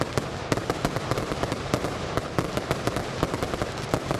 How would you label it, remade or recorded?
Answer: recorded